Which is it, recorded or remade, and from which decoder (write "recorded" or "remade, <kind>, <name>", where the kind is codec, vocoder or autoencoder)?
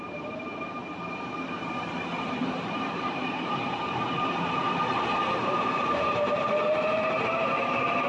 remade, vocoder, BigVGAN v2